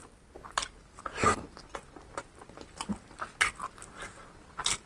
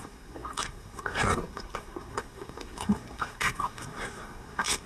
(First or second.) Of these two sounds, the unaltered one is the first